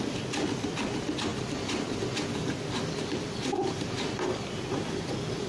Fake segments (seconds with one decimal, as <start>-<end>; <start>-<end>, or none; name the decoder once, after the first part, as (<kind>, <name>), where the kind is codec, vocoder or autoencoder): none